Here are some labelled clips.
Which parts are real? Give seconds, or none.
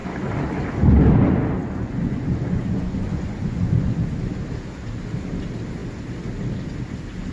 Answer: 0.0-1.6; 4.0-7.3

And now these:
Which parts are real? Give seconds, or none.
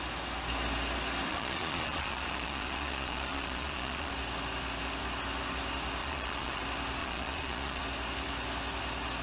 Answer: 0.0-1.3; 4.1-6.0; 6.6-7.0; 7.8-9.2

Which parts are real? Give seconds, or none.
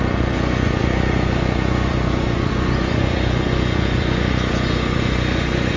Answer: none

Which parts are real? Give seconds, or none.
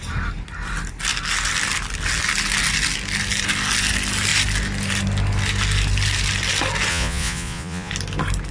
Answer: 0.0-6.9; 7.9-8.5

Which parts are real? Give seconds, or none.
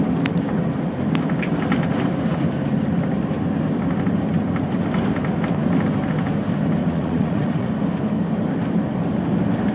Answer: 0.0-6.8; 7.7-9.7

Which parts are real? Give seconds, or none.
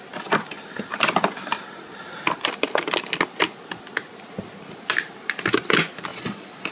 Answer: 0.0-6.1